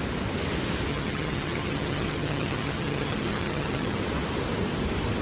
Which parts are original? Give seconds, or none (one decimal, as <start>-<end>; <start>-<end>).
0.0-0.9; 4.0-5.2